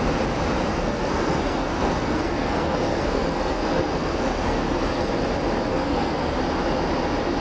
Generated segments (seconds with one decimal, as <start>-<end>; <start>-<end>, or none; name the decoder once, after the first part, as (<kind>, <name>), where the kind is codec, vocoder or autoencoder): 0.7-5.1 (codec, SNAC); 5.7-6.4

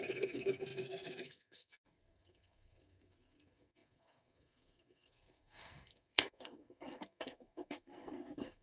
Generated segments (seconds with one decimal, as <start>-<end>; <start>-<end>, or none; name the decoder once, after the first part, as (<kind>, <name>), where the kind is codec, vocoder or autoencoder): 0.0-8.6 (codec, SNAC)